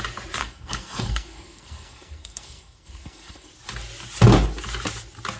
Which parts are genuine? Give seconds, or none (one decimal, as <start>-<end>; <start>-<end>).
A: 0.0-0.4; 3.5-5.4